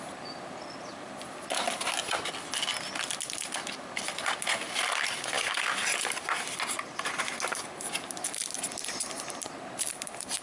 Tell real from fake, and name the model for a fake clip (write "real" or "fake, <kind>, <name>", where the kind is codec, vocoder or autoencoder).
real